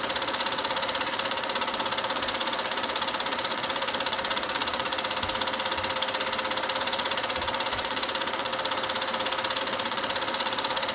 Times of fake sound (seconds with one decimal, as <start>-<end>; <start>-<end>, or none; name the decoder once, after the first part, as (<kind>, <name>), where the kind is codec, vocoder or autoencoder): 0.0-4.9 (vocoder, Vocos); 6.8-8.5; 9.6-10.9